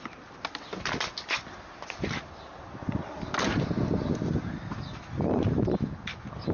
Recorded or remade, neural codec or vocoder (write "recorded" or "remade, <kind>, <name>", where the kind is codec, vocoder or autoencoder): recorded